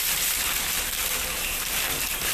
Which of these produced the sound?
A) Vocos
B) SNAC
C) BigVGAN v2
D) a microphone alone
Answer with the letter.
C